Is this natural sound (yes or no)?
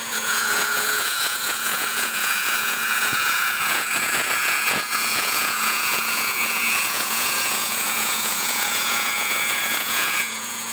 no